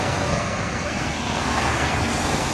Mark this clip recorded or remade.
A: remade